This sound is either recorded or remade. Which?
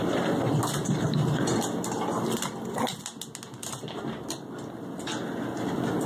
recorded